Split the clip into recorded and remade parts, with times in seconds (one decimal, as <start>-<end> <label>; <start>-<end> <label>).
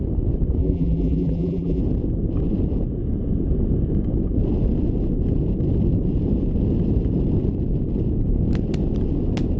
0.0-0.6 recorded; 0.6-1.8 remade; 1.8-9.6 recorded